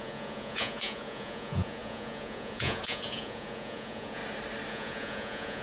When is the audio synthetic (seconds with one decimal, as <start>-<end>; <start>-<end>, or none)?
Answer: 0.0-4.2; 4.7-5.6